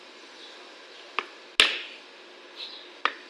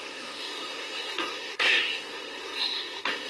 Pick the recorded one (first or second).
first